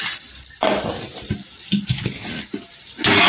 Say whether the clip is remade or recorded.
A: recorded